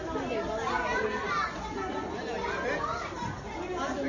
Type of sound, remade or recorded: recorded